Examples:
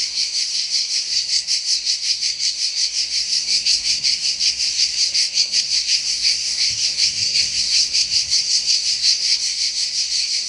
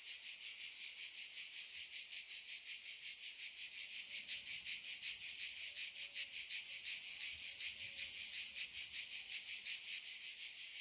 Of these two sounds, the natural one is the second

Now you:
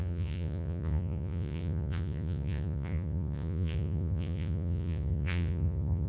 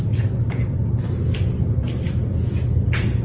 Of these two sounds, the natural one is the second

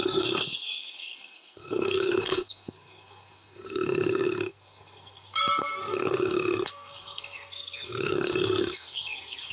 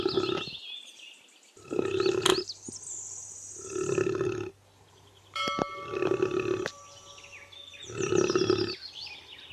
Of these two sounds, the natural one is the second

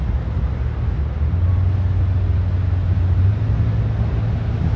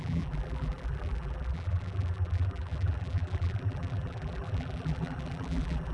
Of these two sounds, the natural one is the first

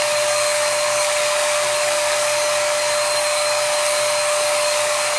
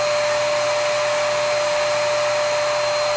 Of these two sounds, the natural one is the second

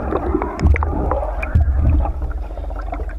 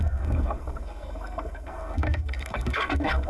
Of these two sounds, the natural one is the first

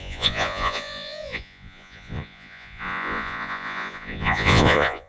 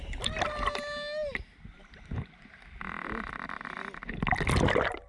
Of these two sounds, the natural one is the second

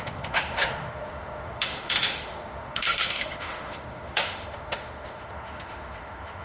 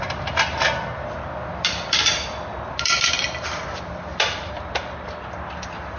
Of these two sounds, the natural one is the second